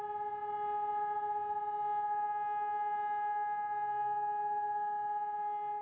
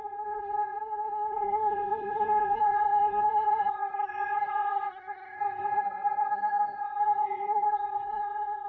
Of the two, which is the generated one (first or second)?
second